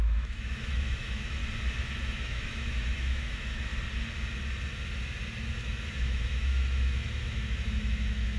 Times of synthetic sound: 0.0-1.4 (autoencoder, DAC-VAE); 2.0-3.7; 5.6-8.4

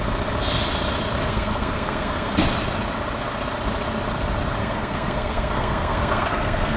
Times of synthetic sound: 1.2-2.3 (codec, SNAC); 4.6-6.8